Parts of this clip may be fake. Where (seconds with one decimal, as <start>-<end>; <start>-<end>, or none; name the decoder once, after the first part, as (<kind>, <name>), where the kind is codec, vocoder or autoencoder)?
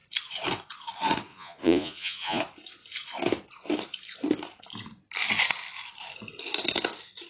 1.3-2.4 (vocoder, Vocos)